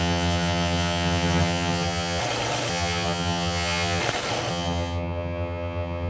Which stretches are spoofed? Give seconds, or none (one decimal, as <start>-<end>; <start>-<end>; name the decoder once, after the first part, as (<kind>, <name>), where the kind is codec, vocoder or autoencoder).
0.0-2.2 (vocoder, HiFi-GAN); 2.7-4.0; 4.5-6.1